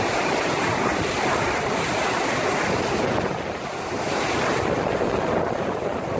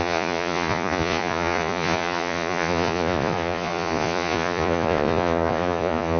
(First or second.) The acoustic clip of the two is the first